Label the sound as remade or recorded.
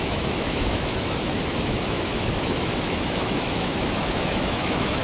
remade